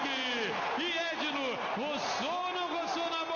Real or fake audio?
real